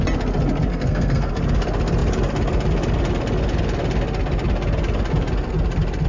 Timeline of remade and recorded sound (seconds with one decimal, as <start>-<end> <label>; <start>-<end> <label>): 0.0-0.7 recorded; 0.7-1.3 remade; 1.3-6.1 recorded